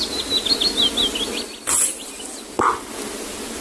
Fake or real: real